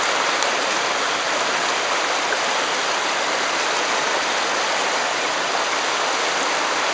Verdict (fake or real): real